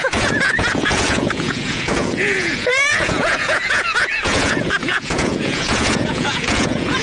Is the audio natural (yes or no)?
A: no